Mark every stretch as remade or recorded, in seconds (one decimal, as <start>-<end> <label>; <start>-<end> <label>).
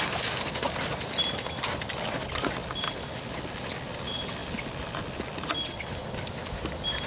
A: 0.0-7.1 recorded